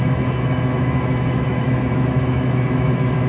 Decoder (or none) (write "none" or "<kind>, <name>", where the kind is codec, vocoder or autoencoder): autoencoder, DAC-VAE